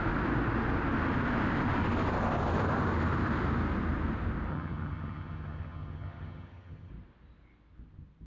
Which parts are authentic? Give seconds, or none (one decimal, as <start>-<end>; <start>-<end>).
0.0-4.5; 6.9-8.3